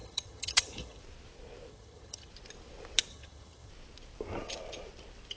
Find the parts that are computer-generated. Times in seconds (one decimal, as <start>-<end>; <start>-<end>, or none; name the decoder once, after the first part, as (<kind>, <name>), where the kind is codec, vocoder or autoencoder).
0.0-1.0 (vocoder, HiFi-GAN); 1.7-2.3; 3.1-3.7